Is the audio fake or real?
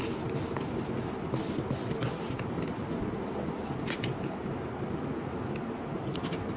real